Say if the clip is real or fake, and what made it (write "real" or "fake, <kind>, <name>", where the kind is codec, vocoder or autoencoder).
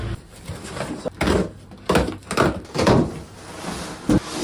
real